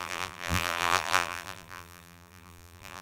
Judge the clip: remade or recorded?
remade